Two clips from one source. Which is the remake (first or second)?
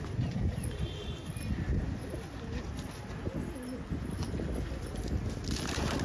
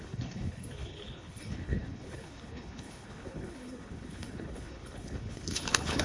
second